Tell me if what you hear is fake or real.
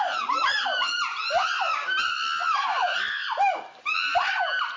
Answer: real